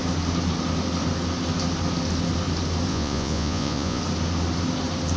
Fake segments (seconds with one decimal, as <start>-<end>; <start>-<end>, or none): 2.9-4.0